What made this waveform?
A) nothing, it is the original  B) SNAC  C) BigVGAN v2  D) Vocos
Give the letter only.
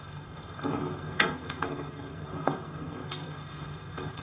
B